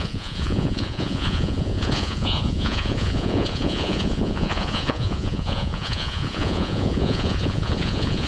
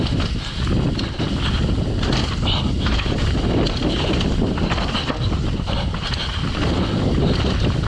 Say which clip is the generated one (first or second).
first